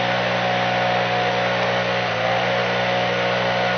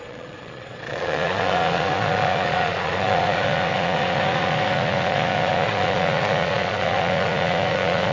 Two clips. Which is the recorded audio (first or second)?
first